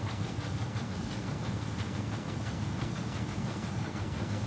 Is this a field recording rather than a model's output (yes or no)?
no